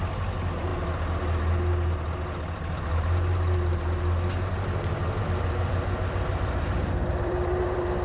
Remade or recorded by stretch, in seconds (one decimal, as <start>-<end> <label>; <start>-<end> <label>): 0.0-0.7 remade; 0.7-5.2 recorded; 5.2-8.0 remade

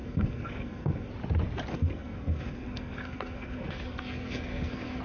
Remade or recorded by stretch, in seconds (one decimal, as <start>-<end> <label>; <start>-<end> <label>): 0.0-1.1 remade; 1.1-1.7 recorded; 1.7-5.0 remade

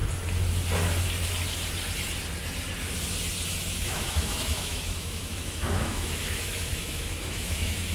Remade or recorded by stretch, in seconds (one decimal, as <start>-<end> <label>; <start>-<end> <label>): 0.0-3.7 recorded; 3.7-7.9 remade

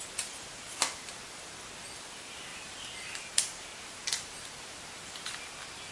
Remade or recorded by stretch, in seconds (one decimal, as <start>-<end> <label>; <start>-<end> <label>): 0.0-2.5 recorded; 2.5-4.6 remade; 4.6-5.9 recorded